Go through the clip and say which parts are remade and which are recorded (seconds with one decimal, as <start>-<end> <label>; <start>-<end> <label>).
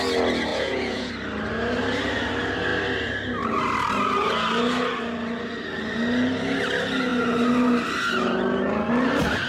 0.0-0.5 recorded; 0.5-1.1 remade; 1.1-9.5 recorded